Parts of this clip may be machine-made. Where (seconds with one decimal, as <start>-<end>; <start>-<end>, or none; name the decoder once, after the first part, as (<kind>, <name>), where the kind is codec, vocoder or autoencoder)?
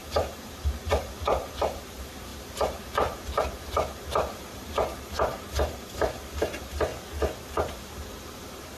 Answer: 0.0-6.9 (vocoder, BigVGAN v2); 7.4-8.8